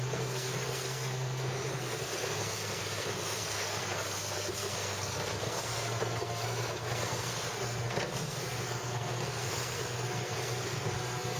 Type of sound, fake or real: fake